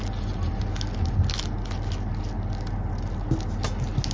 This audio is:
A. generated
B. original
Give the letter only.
B